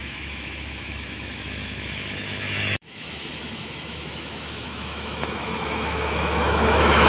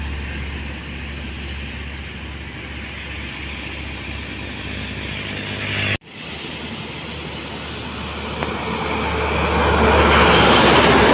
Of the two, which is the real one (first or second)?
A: second